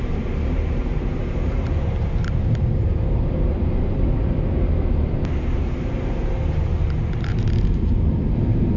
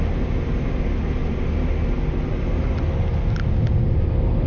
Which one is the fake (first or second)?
first